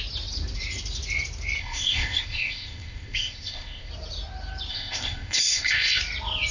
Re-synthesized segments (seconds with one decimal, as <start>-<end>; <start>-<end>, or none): 1.6-3.9; 4.7-6.0

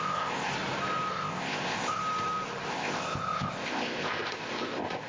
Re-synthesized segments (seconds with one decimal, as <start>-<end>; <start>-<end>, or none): 0.0-0.5; 1.1-2.0; 2.7-5.1

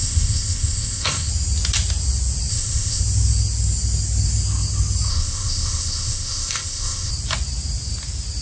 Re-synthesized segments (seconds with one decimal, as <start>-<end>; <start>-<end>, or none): 0.0-1.3; 2.5-3.0; 5.1-7.1

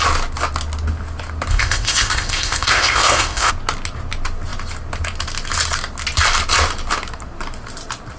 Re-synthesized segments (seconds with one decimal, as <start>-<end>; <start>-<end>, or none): 1.5-3.5

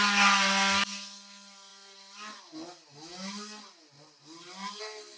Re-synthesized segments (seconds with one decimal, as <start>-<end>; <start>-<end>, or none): none

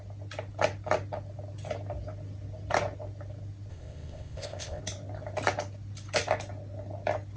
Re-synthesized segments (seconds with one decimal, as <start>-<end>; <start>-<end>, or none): 3.7-4.8